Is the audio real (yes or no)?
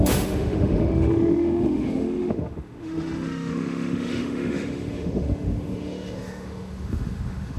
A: no